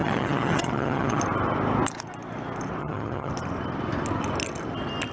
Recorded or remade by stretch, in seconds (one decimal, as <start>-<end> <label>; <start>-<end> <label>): 0.0-1.2 remade; 1.2-2.8 recorded; 2.8-3.3 remade; 3.3-5.1 recorded